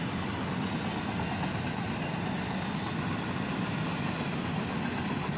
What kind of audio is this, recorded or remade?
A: recorded